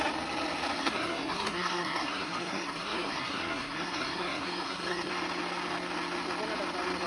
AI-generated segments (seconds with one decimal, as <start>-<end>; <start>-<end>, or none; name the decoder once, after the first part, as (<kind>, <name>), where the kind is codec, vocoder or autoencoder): 0.8-5.1 (codec, SNAC)